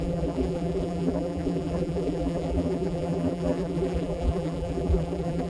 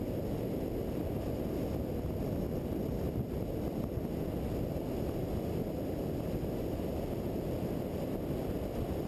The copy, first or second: first